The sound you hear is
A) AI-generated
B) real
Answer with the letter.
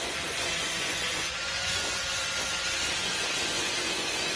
A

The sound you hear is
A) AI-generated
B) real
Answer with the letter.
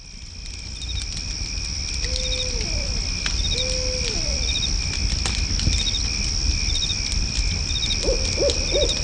B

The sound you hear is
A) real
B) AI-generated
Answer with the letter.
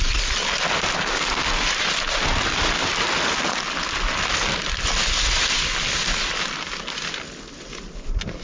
A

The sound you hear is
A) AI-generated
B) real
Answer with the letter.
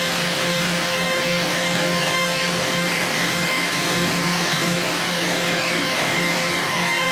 A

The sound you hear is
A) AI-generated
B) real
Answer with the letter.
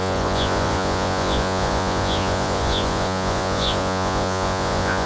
A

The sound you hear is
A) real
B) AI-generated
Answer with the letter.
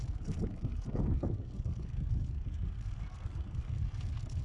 B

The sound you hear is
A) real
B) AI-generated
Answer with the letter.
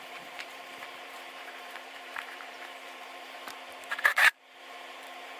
B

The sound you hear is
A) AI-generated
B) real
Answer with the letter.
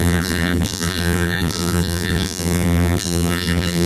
A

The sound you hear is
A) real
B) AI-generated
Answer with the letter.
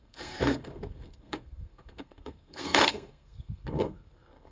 B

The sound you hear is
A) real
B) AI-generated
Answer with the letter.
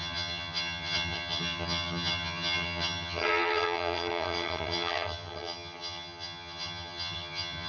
B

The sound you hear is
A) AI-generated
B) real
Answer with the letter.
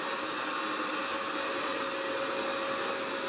B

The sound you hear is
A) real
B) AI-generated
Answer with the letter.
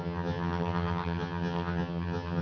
B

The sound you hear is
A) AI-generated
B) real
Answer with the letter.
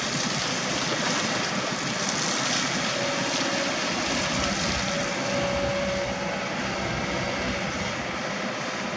B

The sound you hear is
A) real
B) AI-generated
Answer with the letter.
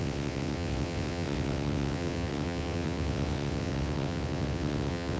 B